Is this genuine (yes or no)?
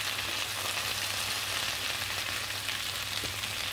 yes